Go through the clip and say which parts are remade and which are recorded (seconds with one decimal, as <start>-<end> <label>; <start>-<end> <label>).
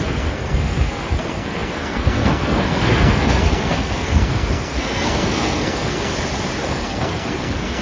0.0-6.1 remade; 6.1-6.7 recorded; 6.7-7.8 remade